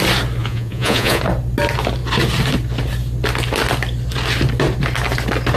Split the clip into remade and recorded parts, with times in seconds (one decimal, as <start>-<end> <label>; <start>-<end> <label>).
0.0-0.4 recorded; 0.4-1.2 remade; 1.2-5.6 recorded